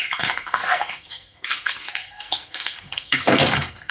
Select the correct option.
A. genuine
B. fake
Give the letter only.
B